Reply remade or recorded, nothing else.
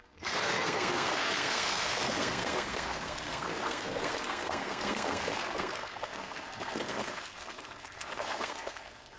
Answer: remade